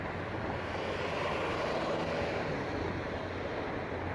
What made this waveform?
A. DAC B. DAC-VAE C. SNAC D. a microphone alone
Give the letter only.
D